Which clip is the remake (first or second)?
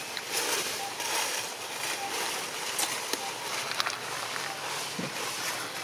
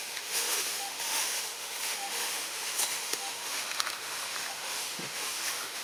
second